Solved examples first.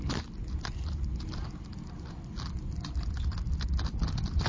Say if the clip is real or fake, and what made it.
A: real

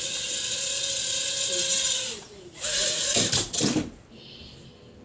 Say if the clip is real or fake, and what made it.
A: real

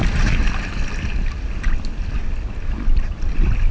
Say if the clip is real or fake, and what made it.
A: real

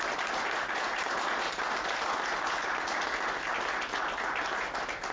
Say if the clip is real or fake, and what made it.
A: real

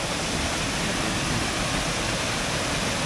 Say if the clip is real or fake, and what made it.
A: real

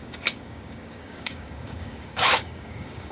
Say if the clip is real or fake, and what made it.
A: fake, codec, DAC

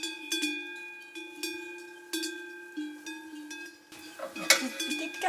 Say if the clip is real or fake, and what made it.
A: real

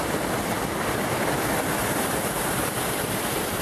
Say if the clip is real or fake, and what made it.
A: real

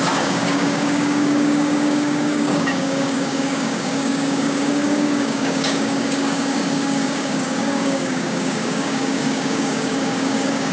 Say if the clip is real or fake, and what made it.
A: fake, codec, DAC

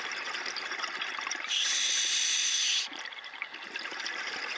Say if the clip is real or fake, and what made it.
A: real